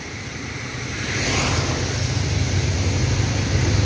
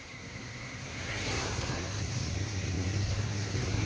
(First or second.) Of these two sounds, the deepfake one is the second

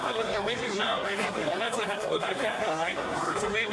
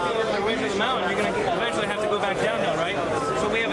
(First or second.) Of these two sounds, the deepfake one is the first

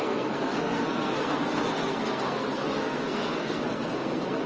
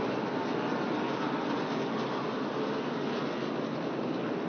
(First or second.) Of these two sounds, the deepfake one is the first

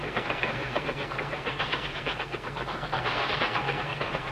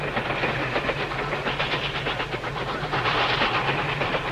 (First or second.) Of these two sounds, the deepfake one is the first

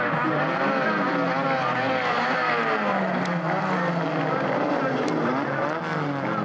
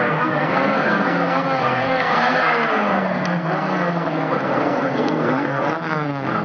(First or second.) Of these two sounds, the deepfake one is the second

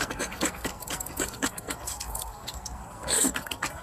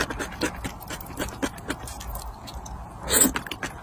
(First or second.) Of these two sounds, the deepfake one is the first